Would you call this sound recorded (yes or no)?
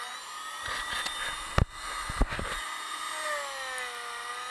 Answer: yes